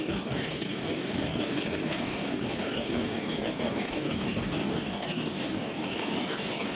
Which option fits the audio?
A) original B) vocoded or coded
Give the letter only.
B